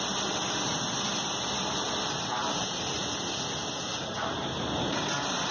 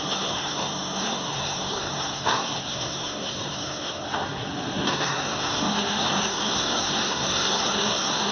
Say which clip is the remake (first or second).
second